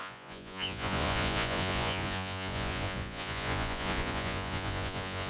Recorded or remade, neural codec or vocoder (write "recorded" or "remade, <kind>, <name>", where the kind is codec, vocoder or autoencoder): remade, vocoder, Vocos